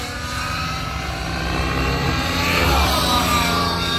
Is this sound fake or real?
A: fake